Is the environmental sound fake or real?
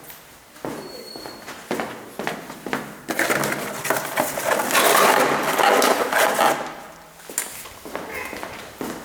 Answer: real